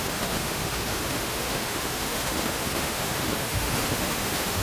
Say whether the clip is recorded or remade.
remade